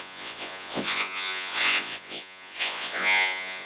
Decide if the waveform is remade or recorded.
remade